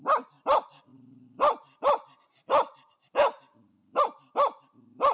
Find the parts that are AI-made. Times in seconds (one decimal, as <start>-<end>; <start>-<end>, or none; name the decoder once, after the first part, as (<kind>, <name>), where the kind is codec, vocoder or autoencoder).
none

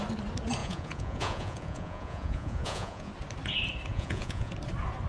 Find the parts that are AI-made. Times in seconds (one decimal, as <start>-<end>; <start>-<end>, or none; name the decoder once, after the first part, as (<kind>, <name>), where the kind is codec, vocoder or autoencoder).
0.6-3.1 (vocoder, Vocos); 3.9-4.5

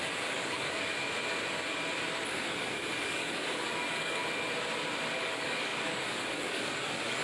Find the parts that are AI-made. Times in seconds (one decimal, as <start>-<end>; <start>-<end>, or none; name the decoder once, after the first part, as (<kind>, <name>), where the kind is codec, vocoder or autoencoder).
0.0-0.9 (codec, DAC); 2.3-4.2; 5.2-7.2

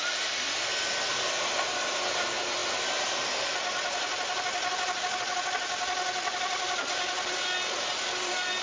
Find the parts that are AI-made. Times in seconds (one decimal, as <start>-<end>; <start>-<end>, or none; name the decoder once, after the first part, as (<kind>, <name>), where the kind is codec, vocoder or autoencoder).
none